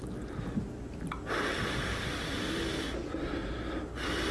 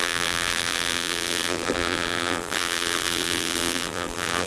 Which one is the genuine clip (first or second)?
first